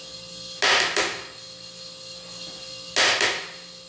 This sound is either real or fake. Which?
real